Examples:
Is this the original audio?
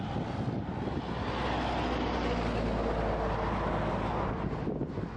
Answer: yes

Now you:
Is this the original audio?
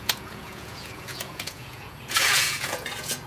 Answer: no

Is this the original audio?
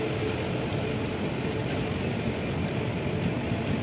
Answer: yes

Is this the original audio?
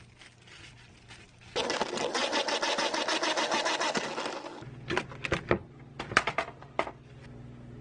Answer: yes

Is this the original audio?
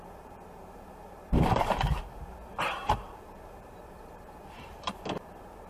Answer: no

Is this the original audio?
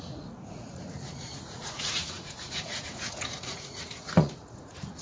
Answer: no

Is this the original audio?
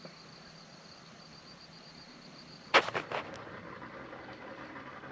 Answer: yes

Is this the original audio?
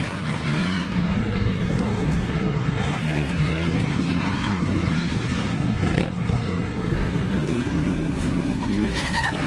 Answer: no